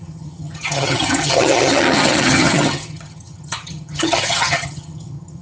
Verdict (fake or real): fake